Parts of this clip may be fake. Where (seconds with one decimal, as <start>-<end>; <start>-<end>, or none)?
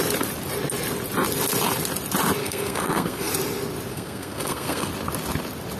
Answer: 2.4-3.3; 3.9-4.9